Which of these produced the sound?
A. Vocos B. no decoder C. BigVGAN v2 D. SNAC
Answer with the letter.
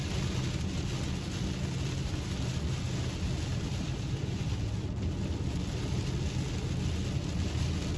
B